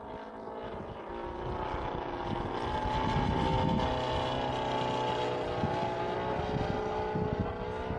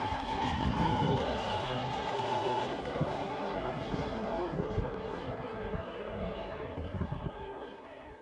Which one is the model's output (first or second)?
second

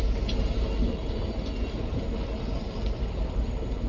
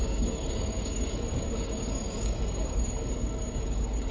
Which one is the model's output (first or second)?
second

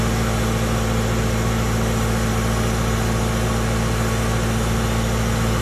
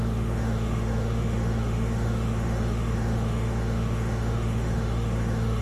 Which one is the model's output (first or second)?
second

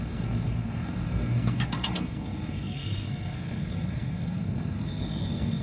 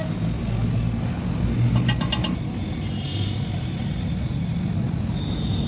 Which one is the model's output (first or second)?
first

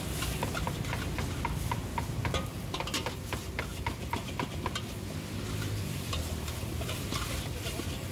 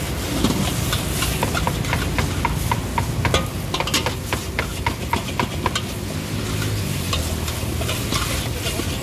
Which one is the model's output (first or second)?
first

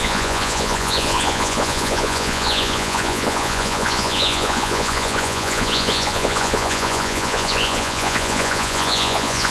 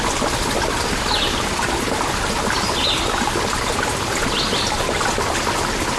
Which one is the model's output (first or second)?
first